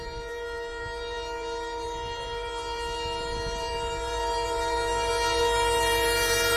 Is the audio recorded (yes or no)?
no